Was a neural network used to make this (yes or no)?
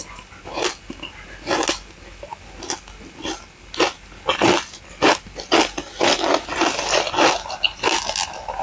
no